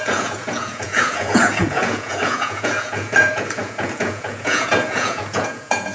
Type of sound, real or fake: fake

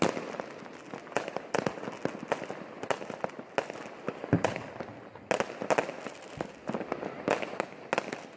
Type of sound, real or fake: real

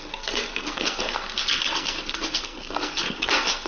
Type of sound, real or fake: fake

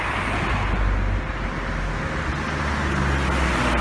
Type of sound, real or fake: real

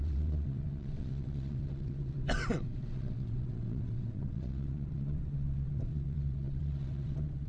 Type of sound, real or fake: fake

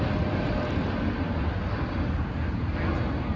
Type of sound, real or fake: real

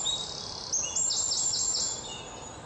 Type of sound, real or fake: real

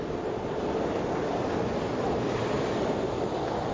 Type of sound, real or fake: real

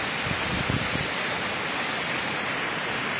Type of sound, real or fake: real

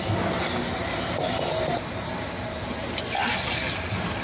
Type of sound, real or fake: real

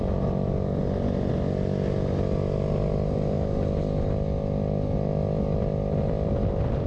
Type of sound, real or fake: real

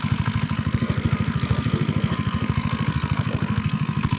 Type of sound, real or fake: fake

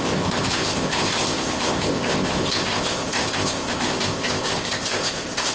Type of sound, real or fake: fake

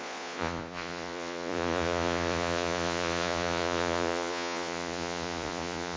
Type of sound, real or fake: fake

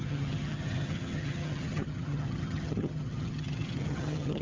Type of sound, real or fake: fake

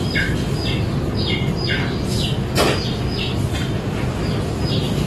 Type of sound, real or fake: real